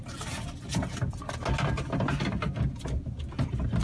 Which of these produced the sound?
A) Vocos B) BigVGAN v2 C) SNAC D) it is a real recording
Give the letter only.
D